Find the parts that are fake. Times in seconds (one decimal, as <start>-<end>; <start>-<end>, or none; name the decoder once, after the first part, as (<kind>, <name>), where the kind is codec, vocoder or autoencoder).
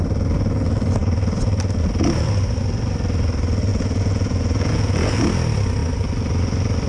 3.7-5.2 (vocoder, Vocos)